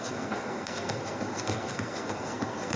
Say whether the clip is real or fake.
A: fake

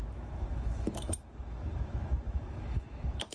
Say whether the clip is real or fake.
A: fake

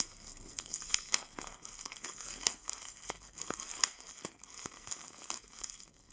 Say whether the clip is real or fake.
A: fake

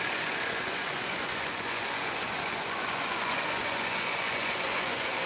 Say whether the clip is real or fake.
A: fake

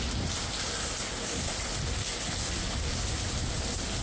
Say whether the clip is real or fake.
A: real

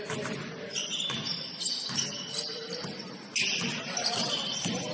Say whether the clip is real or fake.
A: real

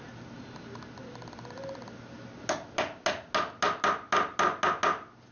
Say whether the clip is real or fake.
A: real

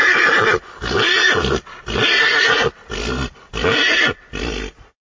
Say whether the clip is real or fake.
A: real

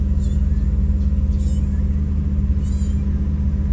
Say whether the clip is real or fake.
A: real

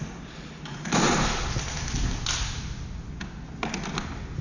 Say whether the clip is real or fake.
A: real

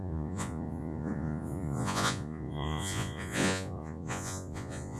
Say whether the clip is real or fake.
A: fake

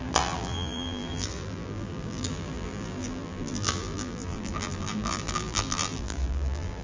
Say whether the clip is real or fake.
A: fake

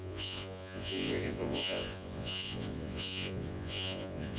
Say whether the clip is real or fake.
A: fake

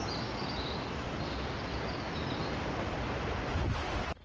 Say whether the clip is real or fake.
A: real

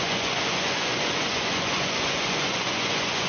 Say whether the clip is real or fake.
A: fake